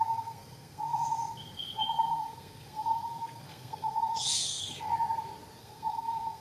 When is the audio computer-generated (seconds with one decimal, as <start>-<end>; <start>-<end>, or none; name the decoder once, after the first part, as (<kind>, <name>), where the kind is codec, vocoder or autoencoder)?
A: 0.0-4.9 (codec, SNAC); 5.6-6.4